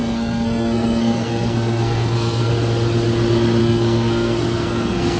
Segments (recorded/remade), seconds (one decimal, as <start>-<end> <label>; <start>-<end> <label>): 0.0-2.5 remade; 2.5-3.6 recorded; 3.6-5.2 remade